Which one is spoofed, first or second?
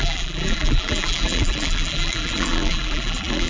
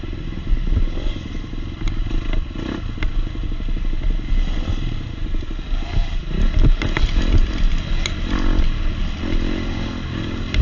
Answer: first